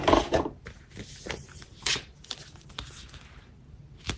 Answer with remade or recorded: recorded